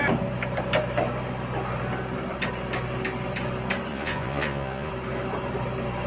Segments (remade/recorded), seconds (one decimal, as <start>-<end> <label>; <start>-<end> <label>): 0.0-3.9 recorded; 3.9-4.9 remade; 4.9-6.1 recorded